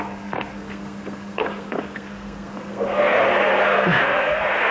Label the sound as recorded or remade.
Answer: remade